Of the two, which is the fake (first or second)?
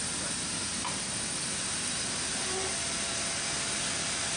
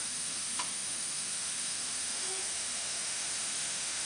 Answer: second